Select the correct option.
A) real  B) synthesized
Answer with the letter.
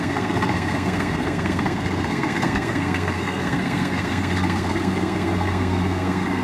B